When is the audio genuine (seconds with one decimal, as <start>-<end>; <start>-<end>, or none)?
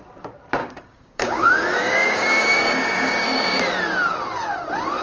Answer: 0.0-0.6; 3.6-5.0